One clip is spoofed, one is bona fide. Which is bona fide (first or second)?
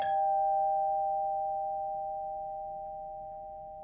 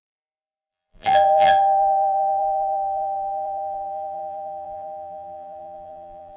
first